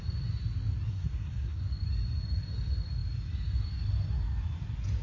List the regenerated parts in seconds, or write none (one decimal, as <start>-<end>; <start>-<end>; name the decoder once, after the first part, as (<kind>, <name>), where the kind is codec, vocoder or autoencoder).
0.9-1.6 (codec, SNAC)

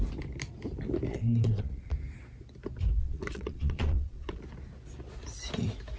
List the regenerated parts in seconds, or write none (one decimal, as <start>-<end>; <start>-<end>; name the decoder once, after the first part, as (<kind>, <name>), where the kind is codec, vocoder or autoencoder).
1.1-1.9 (vocoder, Vocos); 3.0-4.4

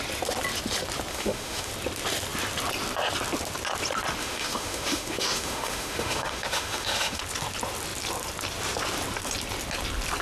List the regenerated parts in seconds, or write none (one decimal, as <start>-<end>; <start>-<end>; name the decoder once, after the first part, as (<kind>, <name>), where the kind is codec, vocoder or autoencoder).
1.1-1.7 (autoencoder, DAC-VAE); 4.2-7.2